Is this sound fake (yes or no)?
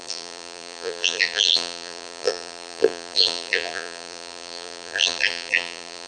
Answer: yes